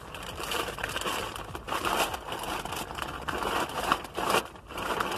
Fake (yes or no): no